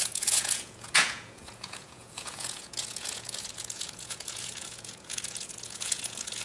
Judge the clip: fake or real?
fake